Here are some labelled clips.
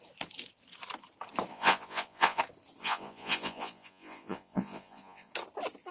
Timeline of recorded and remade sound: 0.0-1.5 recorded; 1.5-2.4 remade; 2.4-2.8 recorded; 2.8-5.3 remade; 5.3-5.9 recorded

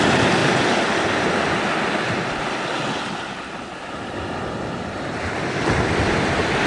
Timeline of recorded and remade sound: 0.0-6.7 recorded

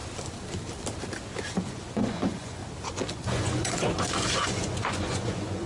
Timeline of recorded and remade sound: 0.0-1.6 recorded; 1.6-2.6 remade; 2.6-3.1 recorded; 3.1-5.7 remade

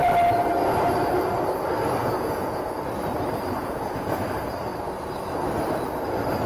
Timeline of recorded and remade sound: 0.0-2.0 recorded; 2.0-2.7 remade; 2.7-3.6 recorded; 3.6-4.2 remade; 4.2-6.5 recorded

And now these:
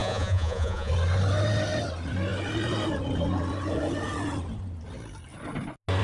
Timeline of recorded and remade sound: 0.0-0.9 remade; 0.9-6.0 recorded